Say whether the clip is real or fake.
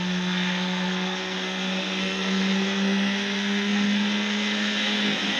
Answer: fake